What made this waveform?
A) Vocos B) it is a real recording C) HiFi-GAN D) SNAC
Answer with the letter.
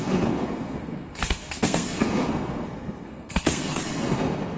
D